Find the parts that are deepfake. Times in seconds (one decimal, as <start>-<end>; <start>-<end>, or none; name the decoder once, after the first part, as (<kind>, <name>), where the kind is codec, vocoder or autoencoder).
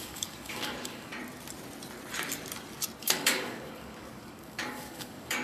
0.0-1.1 (codec, DAC); 3.0-5.4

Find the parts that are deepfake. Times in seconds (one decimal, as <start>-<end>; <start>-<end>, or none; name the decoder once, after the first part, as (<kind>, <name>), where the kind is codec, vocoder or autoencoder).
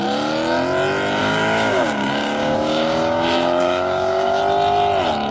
1.2-4.4 (codec, DAC)